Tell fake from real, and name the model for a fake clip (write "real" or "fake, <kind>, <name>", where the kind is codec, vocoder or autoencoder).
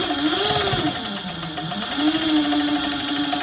real